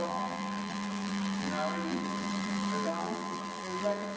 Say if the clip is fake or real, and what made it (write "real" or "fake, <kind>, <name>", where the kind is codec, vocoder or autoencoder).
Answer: fake, vocoder, BigVGAN v2